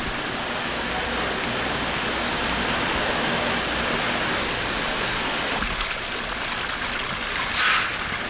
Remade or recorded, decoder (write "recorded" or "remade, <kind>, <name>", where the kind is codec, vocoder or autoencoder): recorded